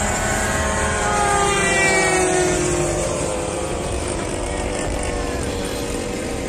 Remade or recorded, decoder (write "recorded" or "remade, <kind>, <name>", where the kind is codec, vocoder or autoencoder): remade, vocoder, BigVGAN v2